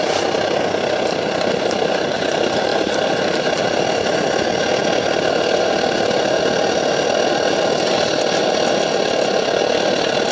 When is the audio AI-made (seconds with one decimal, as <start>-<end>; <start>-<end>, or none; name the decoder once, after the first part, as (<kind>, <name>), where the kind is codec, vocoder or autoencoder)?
none